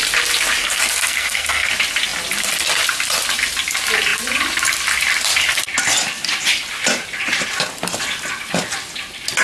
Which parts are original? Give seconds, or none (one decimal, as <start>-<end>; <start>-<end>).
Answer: 0.0-0.6; 1.7-9.4